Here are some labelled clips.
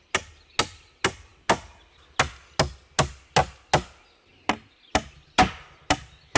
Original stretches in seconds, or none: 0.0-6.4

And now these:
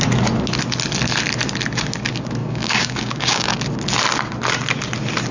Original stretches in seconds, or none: 0.0-2.4; 3.6-5.3